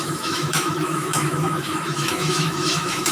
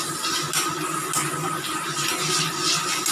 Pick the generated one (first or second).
first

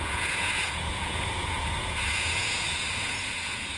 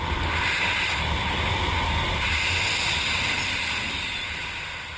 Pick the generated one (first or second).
first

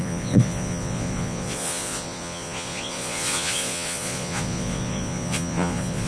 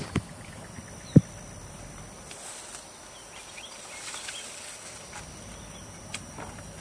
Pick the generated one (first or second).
first